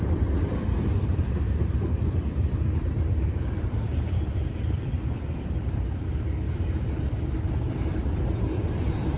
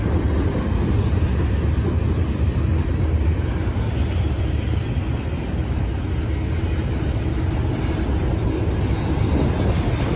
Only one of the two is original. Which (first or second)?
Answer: second